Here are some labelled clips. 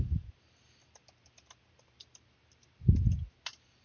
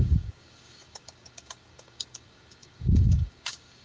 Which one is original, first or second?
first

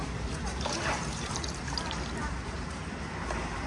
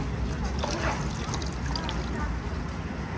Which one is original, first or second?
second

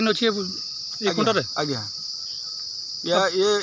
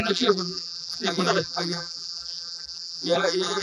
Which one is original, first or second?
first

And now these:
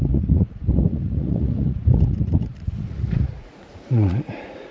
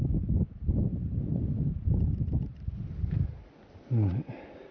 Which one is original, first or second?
second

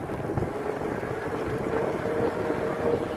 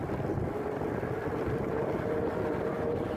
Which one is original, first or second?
first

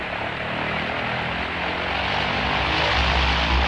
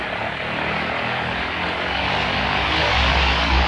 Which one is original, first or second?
first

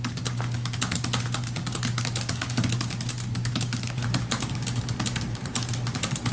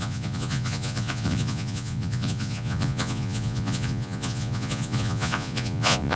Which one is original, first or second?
first